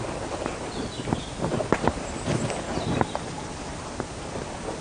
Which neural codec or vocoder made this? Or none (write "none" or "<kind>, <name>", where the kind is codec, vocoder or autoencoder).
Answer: none